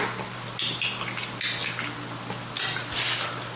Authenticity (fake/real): real